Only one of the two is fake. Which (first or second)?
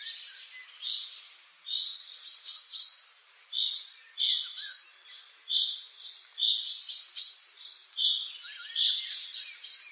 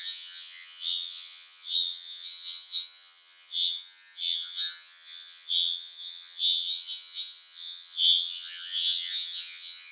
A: second